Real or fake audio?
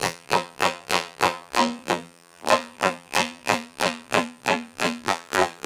fake